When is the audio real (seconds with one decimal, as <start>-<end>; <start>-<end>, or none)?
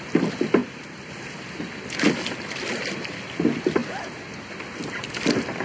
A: 0.0-0.6; 1.1-5.6